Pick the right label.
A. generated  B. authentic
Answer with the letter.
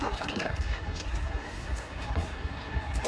A